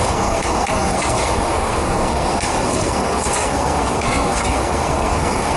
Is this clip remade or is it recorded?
remade